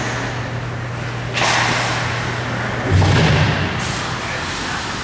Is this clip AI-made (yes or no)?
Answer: no